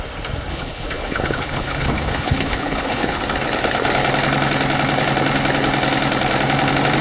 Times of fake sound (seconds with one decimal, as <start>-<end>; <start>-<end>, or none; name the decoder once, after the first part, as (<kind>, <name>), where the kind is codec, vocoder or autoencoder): 0.5-3.2 (codec, HILCodec)